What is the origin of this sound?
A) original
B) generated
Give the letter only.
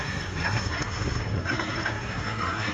B